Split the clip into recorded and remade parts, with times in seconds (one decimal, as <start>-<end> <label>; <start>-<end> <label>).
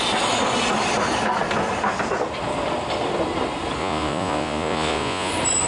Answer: 0.0-3.8 recorded; 3.8-5.3 remade; 5.3-5.7 recorded